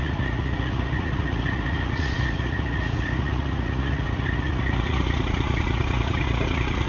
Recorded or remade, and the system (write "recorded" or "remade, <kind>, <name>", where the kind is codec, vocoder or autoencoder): remade, vocoder, Vocos